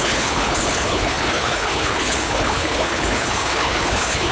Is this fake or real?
fake